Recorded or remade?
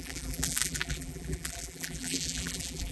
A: remade